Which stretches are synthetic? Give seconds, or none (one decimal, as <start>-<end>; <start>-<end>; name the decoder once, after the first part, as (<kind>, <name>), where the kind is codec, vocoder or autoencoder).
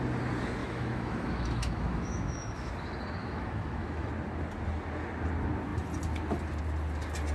0.6-2.7 (autoencoder, DAC-VAE); 3.2-4.1